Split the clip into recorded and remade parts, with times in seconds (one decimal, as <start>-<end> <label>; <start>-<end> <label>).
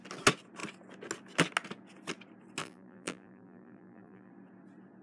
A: 0.0-2.6 recorded; 2.6-4.3 remade; 4.3-5.0 recorded